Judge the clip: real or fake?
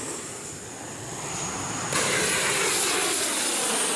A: real